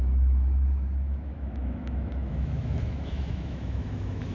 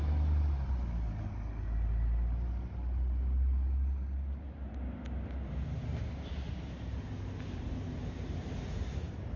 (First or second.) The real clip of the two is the second